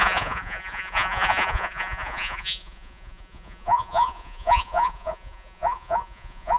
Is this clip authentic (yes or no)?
no